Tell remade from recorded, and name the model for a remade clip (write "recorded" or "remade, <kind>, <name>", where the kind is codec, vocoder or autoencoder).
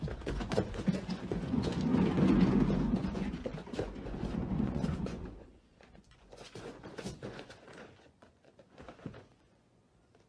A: remade, vocoder, Vocos